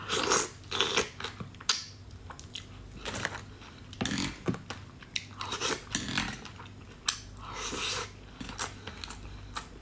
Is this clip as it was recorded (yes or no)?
yes